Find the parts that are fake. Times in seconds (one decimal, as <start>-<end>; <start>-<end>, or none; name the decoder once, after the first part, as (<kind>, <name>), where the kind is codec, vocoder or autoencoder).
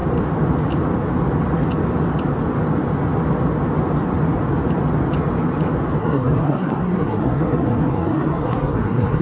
6.0-9.2 (codec, SNAC)